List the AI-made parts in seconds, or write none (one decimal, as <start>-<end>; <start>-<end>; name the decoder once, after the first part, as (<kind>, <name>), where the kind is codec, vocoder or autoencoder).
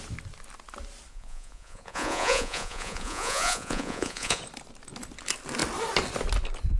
1.1-4.4 (vocoder, Vocos)